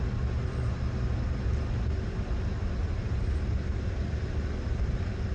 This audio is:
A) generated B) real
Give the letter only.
B